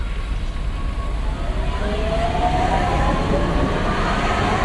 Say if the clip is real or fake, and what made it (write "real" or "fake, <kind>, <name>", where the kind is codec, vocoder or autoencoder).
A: real